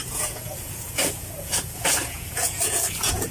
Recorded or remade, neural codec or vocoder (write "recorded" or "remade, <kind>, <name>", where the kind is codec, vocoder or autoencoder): remade, vocoder, Vocos